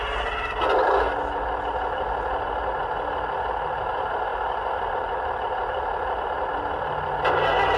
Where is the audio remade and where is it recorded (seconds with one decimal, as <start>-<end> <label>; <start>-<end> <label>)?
0.0-7.8 recorded